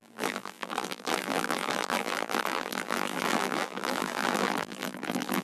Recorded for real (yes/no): no